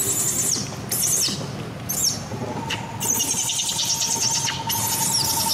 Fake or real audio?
real